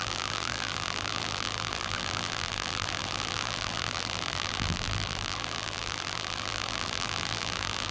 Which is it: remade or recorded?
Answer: remade